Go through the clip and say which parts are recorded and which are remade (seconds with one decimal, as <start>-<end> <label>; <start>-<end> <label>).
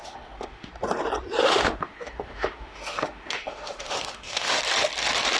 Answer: 0.0-0.7 remade; 0.7-1.4 recorded; 1.4-4.6 remade; 4.6-5.4 recorded